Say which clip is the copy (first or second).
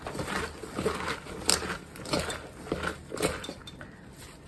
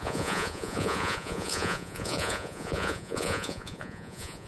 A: second